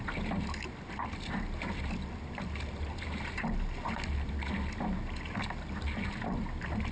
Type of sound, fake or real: real